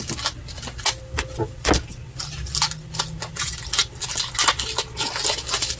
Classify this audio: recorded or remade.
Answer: recorded